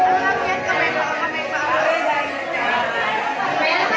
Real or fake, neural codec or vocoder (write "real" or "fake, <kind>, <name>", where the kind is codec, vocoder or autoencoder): real